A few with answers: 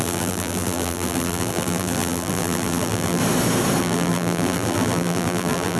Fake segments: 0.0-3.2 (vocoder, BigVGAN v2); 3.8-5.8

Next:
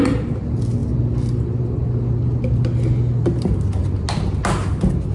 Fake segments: none

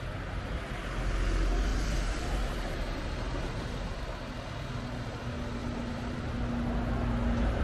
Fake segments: 1.7-4.0 (vocoder, BigVGAN v2); 5.6-6.2

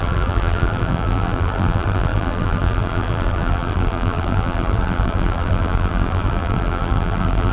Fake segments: 0.0-7.5 (vocoder, BigVGAN v2)

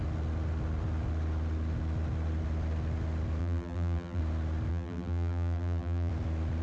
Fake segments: 3.4-4.2 (vocoder, BigVGAN v2); 4.7-6.1